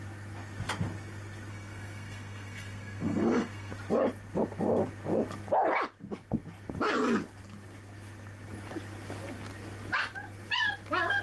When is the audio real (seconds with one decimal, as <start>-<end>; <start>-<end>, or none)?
0.0-1.5; 3.7-11.2